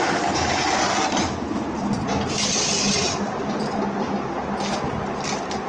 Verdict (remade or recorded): recorded